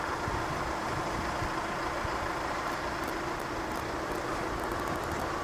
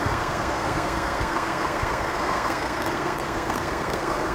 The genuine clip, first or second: first